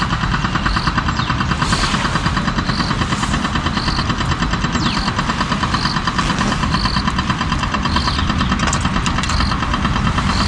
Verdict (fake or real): real